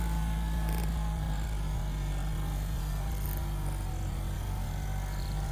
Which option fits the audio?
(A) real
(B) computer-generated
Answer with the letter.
A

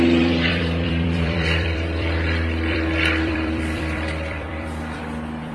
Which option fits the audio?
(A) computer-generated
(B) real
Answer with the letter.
A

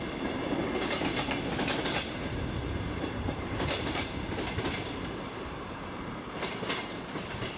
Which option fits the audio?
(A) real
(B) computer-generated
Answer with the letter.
B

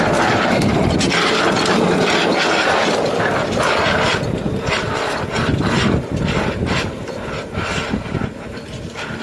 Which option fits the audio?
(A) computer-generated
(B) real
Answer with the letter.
A